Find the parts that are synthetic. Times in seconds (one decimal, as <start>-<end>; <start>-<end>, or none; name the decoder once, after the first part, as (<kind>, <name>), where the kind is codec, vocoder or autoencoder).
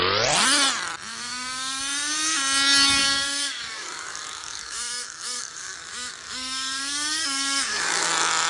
1.1-1.8 (codec, DAC); 3.0-8.1